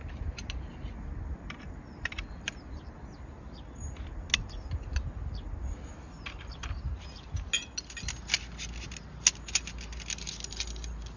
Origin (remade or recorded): recorded